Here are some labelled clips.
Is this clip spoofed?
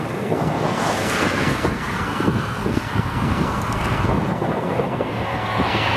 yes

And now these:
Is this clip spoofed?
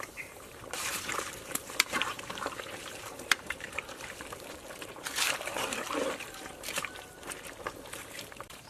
yes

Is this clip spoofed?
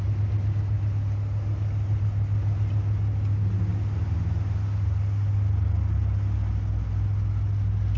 no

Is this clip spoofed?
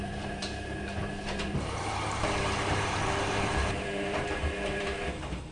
yes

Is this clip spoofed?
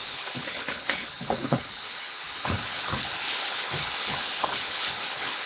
yes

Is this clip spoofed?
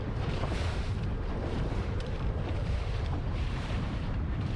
yes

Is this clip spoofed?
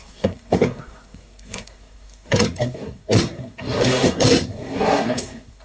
yes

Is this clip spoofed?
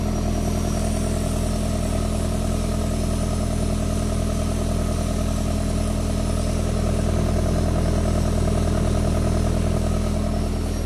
no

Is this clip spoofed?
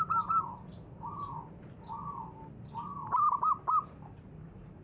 yes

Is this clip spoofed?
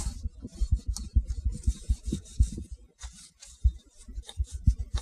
no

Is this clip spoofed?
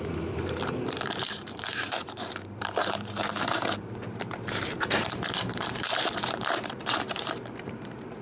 yes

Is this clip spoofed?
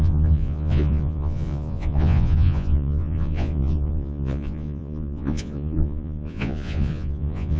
yes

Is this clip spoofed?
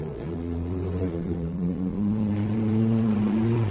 yes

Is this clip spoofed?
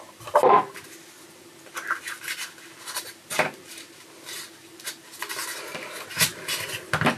no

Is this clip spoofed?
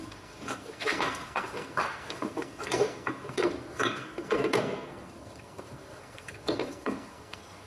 yes